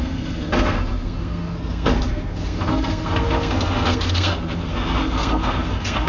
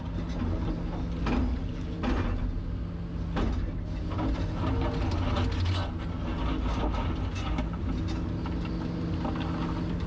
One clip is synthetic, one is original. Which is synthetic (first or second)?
first